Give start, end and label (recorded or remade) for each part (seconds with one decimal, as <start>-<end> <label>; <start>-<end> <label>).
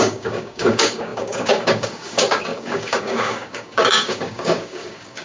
0.0-5.2 remade